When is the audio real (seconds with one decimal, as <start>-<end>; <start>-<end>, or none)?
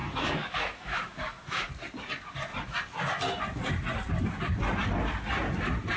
1.7-6.0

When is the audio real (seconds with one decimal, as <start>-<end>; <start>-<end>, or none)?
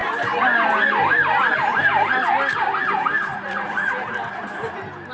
0.0-3.3; 3.9-5.1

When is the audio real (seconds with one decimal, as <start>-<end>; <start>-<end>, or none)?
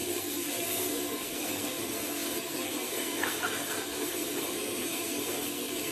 none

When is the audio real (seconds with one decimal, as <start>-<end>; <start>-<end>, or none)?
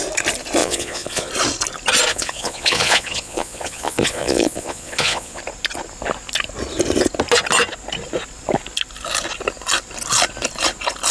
0.0-0.6; 1.3-2.1; 5.4-11.1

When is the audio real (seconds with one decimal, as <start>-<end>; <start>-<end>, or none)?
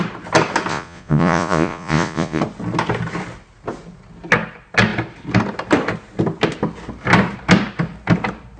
0.0-0.7; 2.4-8.6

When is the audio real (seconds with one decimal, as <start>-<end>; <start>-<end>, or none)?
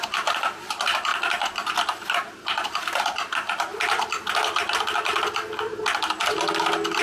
0.0-7.0